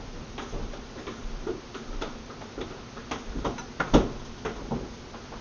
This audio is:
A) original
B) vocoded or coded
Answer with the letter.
A